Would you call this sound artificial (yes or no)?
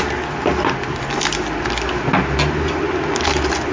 no